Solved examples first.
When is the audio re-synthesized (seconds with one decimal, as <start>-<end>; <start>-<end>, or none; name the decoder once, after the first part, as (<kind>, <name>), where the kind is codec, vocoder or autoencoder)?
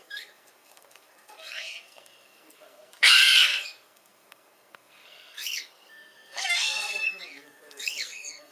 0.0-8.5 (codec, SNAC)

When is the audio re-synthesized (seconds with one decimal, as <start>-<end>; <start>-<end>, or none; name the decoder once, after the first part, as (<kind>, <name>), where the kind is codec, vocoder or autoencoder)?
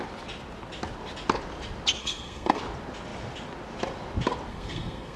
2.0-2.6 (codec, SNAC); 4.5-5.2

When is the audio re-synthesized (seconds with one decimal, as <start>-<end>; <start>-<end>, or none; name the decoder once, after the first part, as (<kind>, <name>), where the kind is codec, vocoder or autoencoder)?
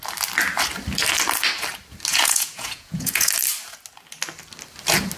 2.1-3.3 (vocoder, Vocos)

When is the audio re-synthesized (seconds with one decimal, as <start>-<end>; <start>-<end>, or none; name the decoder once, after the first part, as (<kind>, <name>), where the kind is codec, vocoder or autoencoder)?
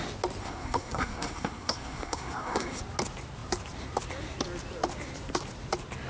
0.4-2.8 (codec, SNAC)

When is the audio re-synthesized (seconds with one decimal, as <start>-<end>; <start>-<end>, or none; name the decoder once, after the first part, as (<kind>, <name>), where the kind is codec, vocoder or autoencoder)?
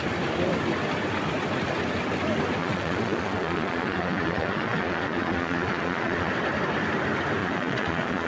2.6-6.3 (vocoder, Vocos); 7.4-8.3